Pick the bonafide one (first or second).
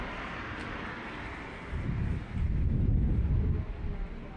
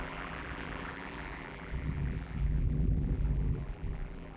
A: first